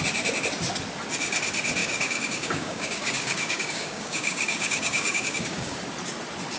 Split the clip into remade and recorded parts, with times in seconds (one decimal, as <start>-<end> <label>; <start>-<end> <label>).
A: 0.0-1.8 recorded; 1.8-5.8 remade; 5.8-6.6 recorded